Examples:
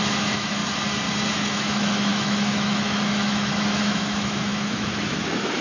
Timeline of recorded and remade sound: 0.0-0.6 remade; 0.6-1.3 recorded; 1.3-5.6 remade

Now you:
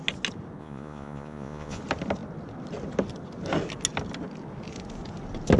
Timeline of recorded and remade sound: 0.0-0.6 recorded; 0.6-1.8 remade; 1.8-5.6 recorded

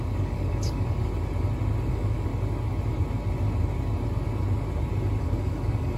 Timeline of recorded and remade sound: 0.0-1.1 remade; 1.1-1.9 recorded; 1.9-2.3 remade; 2.3-5.2 recorded; 5.2-6.0 remade

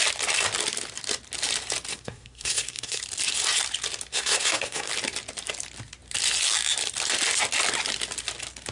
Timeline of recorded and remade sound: 0.0-1.9 recorded; 1.9-3.0 remade; 3.0-4.1 recorded; 4.1-4.9 remade; 4.9-8.7 recorded